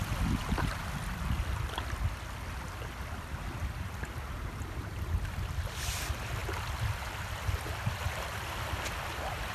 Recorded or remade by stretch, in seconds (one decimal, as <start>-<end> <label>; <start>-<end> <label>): 0.0-9.5 recorded